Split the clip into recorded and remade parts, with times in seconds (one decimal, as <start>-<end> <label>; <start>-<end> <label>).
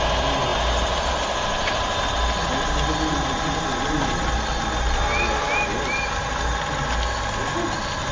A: 0.0-8.1 recorded